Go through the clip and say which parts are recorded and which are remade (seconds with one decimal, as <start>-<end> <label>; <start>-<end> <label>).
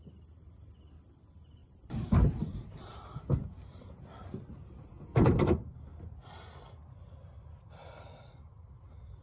0.0-1.6 recorded; 1.6-3.7 remade; 3.7-9.2 recorded